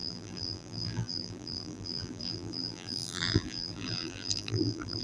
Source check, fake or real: fake